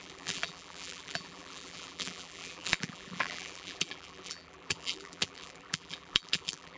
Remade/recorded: remade